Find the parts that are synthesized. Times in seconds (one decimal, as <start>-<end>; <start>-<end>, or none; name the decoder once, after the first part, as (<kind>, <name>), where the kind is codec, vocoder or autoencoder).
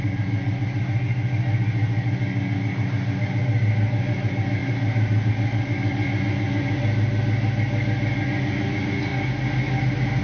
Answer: 4.6-5.3 (vocoder, BigVGAN v2)